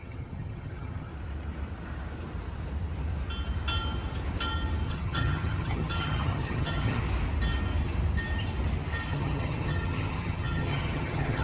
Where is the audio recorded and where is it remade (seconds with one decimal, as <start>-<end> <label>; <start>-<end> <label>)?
0.0-1.1 remade; 1.1-4.9 recorded; 4.9-7.0 remade; 7.0-9.1 recorded; 9.1-11.4 remade